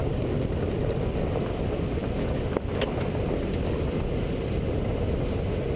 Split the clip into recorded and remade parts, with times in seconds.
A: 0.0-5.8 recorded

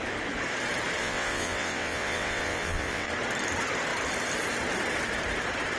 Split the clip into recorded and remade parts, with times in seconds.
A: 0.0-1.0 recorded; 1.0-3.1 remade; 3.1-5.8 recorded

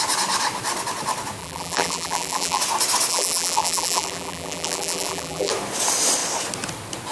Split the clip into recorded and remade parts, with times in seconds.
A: 0.0-1.4 recorded; 1.4-2.6 remade; 2.6-3.1 recorded; 3.1-5.5 remade; 5.5-7.1 recorded

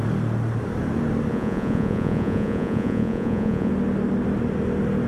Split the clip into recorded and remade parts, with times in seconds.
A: 0.0-1.3 recorded; 1.3-3.7 remade; 3.7-5.1 recorded

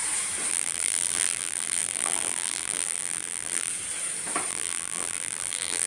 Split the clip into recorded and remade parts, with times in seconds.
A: 0.0-0.5 recorded; 0.5-3.7 remade; 3.7-4.5 recorded; 4.5-5.9 remade

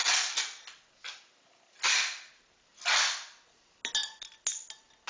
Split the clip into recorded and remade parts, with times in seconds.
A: 0.0-5.1 recorded

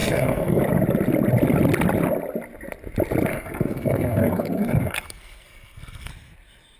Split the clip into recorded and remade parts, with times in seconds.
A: 0.0-0.6 remade; 0.6-3.3 recorded; 3.3-6.1 remade; 6.1-6.8 recorded

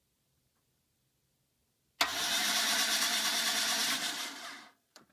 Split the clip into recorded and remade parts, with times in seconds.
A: 0.0-2.1 recorded; 2.1-3.4 remade; 3.4-3.8 recorded; 3.8-5.1 remade